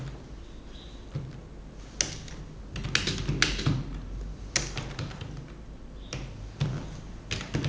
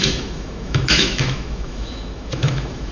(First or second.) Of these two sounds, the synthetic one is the second